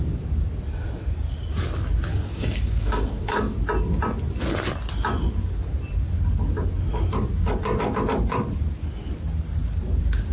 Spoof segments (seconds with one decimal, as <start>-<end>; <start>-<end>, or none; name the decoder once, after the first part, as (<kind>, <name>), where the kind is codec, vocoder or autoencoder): 2.1-3.5 (codec, DAC)